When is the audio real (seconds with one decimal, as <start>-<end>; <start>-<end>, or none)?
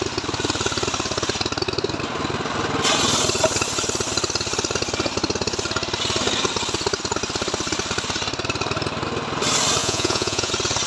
0.0-9.8; 10.5-10.9